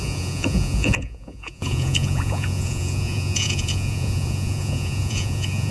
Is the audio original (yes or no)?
no